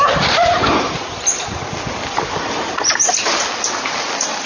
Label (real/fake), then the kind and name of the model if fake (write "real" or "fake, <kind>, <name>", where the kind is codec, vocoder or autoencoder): real